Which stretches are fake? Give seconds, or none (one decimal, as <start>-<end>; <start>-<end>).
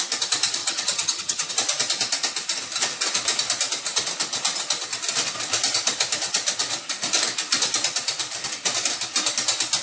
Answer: 0.6-1.5